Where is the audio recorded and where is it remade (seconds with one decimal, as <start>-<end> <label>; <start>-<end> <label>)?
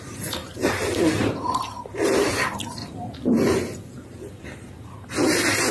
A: 0.0-5.7 remade